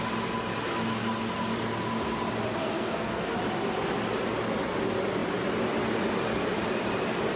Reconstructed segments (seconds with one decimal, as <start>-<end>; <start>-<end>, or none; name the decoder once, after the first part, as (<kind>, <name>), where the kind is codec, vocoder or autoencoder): 2.6-3.3 (codec, SNAC)